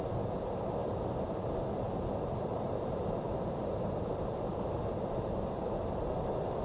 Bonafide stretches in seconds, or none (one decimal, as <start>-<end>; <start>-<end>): 0.0-2.5; 5.8-6.6